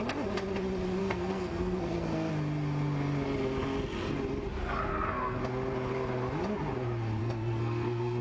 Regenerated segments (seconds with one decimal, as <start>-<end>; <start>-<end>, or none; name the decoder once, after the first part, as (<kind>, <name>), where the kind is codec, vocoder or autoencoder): 1.0-2.3 (codec, SNAC); 4.9-5.4; 7.2-8.2